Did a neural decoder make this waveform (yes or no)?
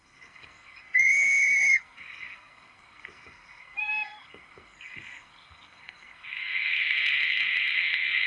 yes